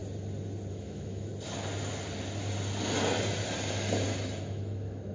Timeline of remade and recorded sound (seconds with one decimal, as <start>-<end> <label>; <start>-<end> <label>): 0.0-0.7 recorded; 0.7-1.3 remade; 1.3-4.4 recorded; 4.4-5.1 remade